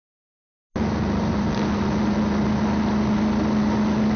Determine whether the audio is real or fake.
real